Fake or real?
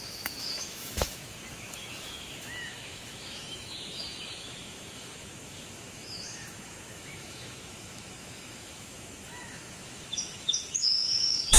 fake